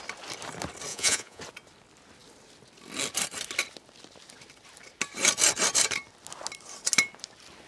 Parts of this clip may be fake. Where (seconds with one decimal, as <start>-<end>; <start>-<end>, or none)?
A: 0.9-1.4